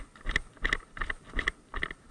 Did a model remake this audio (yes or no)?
no